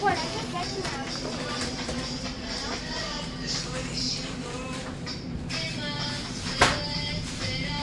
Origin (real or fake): fake